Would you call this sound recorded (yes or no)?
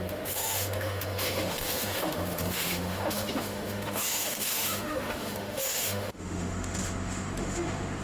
no